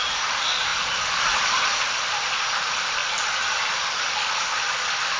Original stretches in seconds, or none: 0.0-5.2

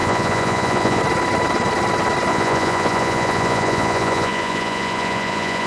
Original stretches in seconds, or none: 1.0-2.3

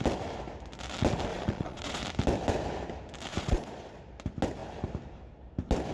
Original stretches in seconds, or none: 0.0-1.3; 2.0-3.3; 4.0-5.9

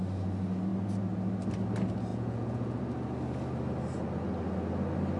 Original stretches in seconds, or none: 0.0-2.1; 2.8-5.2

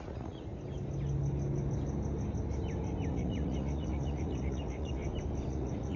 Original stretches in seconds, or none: 0.5-3.1; 5.0-5.5